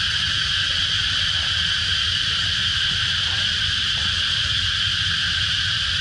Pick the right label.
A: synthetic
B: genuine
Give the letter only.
B